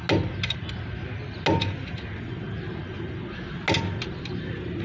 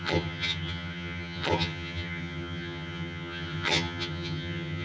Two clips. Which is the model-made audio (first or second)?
second